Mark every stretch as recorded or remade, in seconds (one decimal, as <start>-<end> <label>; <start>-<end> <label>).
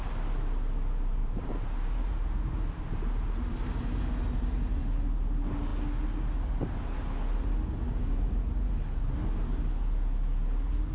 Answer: 0.0-1.2 recorded; 1.2-3.9 remade; 3.9-10.9 recorded